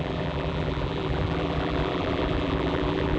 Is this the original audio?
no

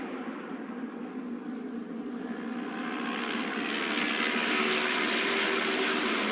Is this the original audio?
yes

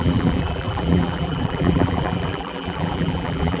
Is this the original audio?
no